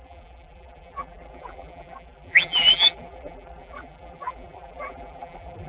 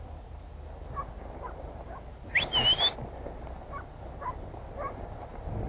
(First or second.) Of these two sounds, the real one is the second